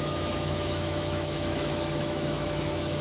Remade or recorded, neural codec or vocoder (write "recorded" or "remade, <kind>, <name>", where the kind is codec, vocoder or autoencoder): remade, autoencoder, DAC-VAE